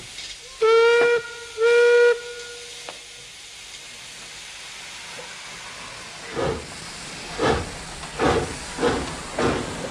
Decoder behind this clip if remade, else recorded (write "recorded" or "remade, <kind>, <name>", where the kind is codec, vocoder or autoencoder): recorded